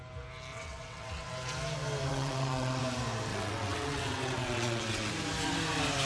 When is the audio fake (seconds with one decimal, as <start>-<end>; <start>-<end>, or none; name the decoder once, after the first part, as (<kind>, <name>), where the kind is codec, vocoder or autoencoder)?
0.5-1.3 (vocoder, WaveNeXt); 2.1-2.8; 3.3-5.1